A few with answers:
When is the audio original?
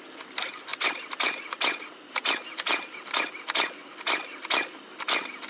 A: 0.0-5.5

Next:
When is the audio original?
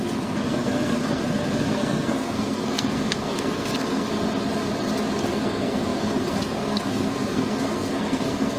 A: 4.1-5.2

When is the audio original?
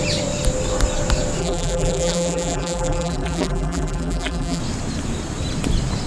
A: 0.0-1.4; 4.6-6.1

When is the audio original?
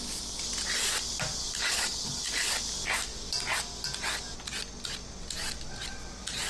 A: 0.0-1.4; 2.5-6.5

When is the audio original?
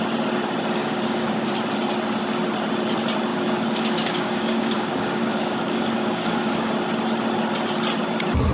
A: 0.0-0.8; 1.5-3.3; 6.7-8.5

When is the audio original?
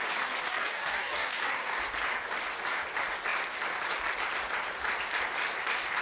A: 0.0-0.5; 1.8-6.0